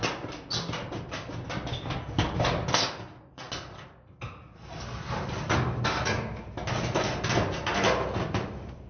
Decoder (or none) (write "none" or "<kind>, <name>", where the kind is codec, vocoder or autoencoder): none